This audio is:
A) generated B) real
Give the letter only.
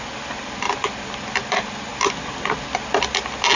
B